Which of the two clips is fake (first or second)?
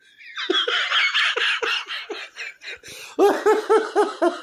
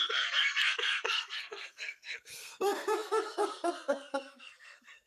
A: second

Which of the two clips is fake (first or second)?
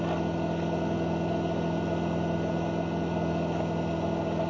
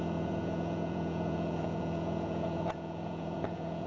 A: second